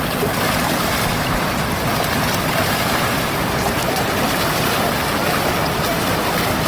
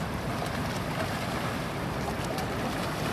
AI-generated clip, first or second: first